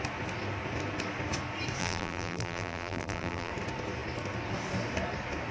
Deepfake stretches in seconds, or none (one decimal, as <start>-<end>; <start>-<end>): 1.8-3.5